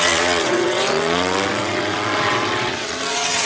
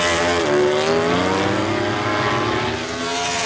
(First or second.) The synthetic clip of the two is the first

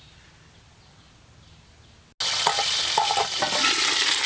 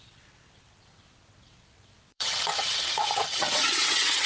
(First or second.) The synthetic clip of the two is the second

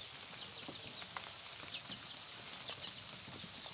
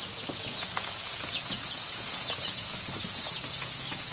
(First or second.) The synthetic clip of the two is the second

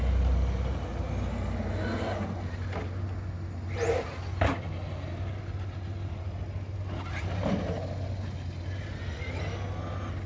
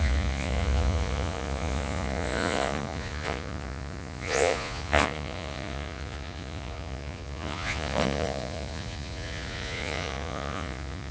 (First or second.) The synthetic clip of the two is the second